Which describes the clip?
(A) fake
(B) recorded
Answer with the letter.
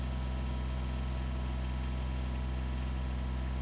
B